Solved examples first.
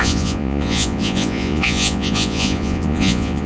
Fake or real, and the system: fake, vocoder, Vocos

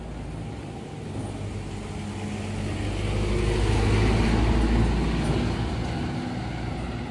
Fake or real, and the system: real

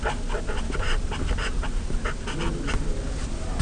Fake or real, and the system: real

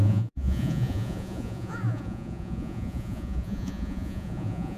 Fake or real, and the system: fake, vocoder, Vocos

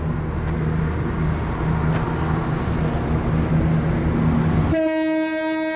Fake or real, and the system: real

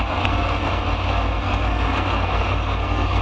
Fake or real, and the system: fake, codec, SNAC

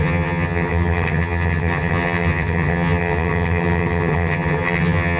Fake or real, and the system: fake, vocoder, HiFi-GAN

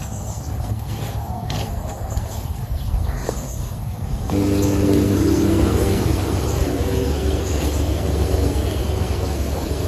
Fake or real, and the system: fake, codec, SNAC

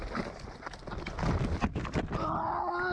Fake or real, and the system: real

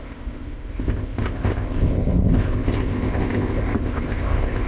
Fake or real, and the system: fake, codec, ZipCodec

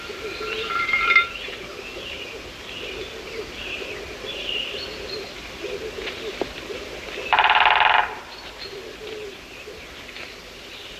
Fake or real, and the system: fake, vocoder, BigVGAN v2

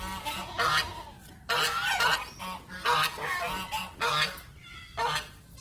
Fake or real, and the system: real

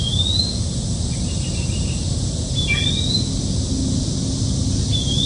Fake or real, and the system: real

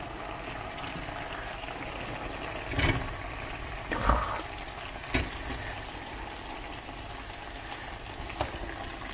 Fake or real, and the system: real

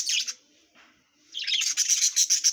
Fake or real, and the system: real